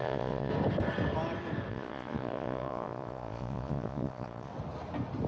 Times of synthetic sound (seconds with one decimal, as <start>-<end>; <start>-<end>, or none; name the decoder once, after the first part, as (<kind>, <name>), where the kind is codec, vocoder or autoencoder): 0.0-0.5 (vocoder, Vocos); 1.7-4.5